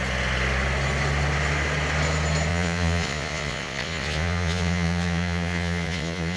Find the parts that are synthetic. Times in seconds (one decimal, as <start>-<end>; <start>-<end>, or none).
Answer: 2.5-6.4